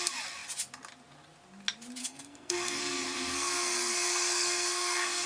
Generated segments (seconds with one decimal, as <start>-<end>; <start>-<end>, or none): 2.0-5.3